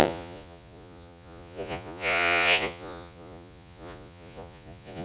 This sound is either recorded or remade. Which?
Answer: remade